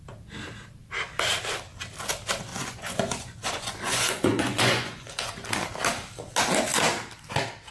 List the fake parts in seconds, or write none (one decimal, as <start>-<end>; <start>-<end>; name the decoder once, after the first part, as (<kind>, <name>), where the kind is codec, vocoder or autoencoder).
2.5-5.4 (vocoder, Vocos)